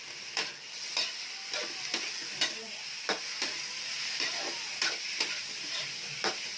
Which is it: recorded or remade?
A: recorded